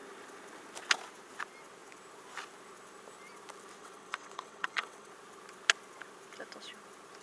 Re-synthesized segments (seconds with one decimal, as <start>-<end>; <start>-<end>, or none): 3.8-5.1